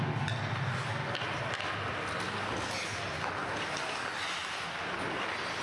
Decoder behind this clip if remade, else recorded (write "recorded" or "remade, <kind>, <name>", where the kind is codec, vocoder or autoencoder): recorded